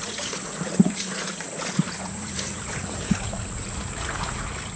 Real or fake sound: fake